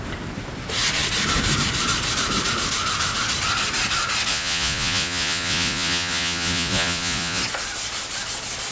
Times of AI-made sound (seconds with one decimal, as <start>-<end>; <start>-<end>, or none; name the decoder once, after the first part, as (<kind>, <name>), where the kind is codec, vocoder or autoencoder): 4.3-7.4 (vocoder, Vocos)